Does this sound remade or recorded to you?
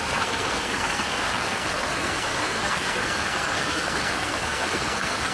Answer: remade